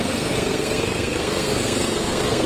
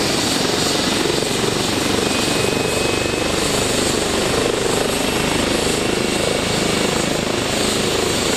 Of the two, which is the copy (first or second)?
first